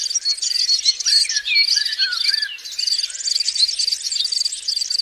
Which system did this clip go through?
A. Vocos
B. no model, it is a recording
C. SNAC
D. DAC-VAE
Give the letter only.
B